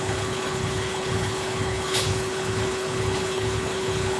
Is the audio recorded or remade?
remade